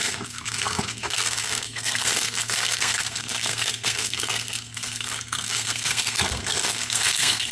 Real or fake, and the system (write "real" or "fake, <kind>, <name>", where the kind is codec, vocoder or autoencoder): fake, codec, SNAC